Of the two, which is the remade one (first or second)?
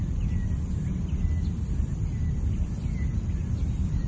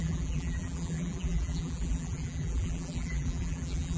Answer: second